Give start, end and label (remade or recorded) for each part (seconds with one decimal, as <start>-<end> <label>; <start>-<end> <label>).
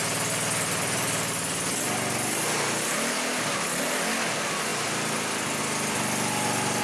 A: 0.0-6.8 recorded